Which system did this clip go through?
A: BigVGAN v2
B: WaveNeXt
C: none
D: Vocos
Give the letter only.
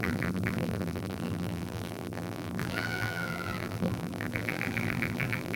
A